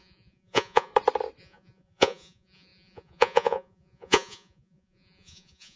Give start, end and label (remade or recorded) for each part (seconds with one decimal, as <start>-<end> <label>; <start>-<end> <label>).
0.0-0.9 remade; 0.9-1.4 recorded; 1.4-5.8 remade